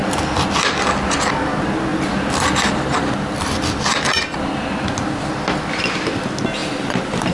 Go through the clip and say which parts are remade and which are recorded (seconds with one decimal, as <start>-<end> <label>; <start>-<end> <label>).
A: 0.0-1.9 recorded; 1.9-4.2 remade; 4.2-6.6 recorded; 6.6-7.3 remade